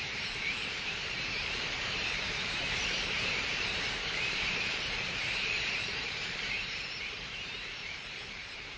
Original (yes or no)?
no